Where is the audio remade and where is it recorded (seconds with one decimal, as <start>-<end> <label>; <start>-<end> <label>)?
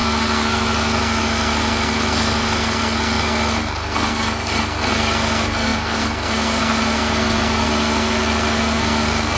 0.0-9.4 remade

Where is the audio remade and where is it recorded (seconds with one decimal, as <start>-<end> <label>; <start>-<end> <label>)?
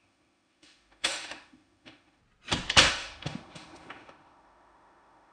0.0-2.2 remade; 2.2-2.9 recorded; 2.9-5.3 remade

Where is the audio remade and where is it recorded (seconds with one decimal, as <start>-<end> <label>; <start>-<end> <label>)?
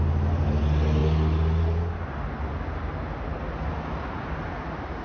0.0-5.0 recorded